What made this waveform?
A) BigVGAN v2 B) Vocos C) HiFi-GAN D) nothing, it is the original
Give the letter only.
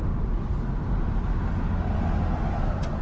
D